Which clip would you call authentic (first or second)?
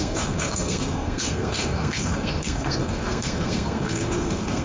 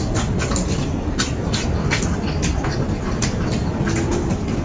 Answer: second